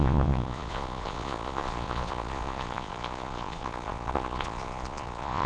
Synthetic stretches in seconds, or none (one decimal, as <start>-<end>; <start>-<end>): 0.0-5.5